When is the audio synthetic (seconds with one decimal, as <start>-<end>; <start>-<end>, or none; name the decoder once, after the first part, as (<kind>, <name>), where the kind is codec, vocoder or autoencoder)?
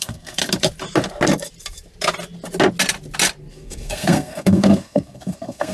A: 0.0-0.4 (codec, SNAC); 3.5-5.7